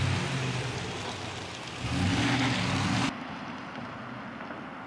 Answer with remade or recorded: recorded